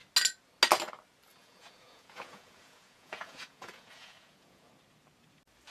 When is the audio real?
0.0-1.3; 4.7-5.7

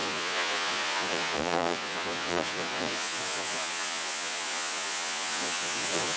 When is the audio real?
none

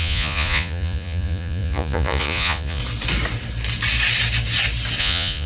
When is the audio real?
2.8-5.0

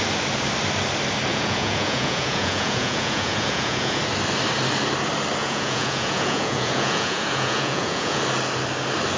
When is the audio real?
0.0-1.3; 4.0-5.4; 8.2-9.2